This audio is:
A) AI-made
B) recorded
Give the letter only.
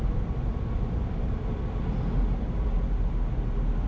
B